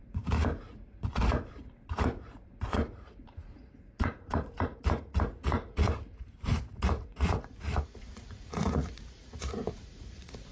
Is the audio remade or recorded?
remade